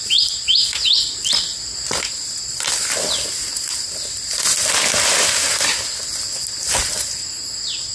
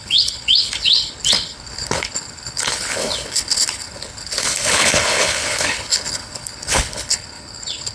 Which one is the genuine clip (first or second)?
first